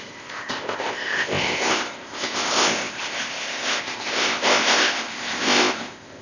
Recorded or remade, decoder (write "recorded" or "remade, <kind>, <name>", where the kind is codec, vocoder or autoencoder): remade, codec, ZipCodec